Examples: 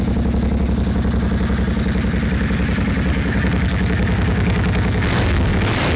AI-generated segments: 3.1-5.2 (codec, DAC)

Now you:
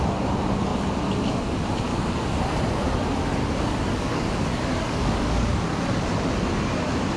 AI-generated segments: 1.9-2.4 (codec, DAC); 3.4-6.1

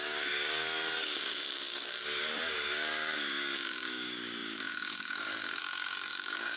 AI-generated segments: 0.0-6.6 (codec, DAC)